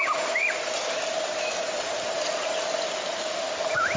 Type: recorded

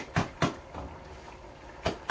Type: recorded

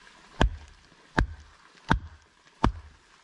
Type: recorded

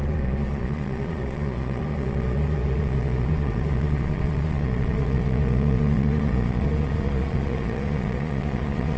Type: remade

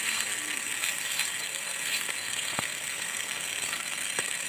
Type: remade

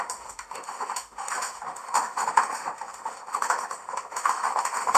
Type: remade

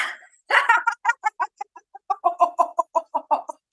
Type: recorded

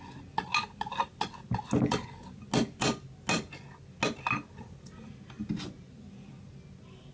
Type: recorded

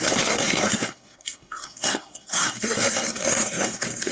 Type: remade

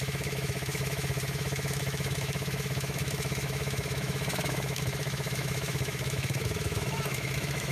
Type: remade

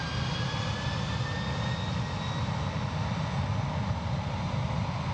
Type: recorded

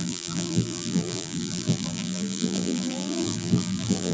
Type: remade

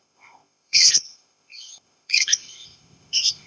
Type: remade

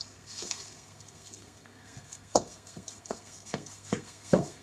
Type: remade